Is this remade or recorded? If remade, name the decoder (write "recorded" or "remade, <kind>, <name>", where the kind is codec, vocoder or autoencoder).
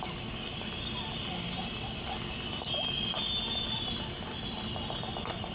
recorded